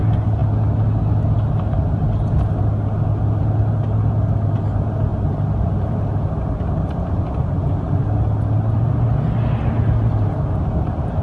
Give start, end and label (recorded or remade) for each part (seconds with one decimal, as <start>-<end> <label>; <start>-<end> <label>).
0.0-5.1 recorded; 5.1-6.0 remade; 6.0-11.2 recorded